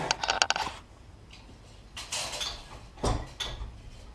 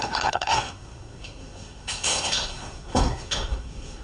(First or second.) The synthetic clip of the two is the second